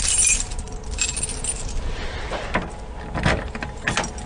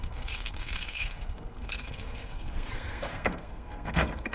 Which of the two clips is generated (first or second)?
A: second